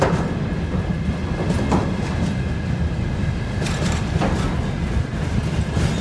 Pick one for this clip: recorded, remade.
recorded